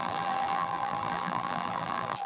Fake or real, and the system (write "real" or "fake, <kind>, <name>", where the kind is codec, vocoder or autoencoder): fake, vocoder, BigVGAN v2